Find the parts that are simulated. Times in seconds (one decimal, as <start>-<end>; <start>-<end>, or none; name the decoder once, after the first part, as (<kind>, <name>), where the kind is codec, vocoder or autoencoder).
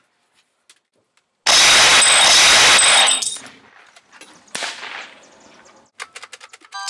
none